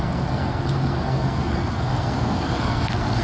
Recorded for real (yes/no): no